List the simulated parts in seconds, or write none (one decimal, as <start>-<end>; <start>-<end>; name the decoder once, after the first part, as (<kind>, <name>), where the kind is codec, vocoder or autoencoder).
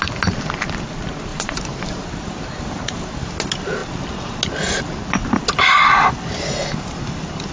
1.3-3.3 (vocoder, BigVGAN v2)